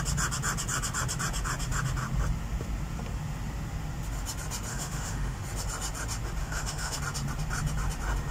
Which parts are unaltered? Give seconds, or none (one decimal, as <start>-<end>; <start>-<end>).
0.0-4.7; 5.4-6.4; 7.0-8.3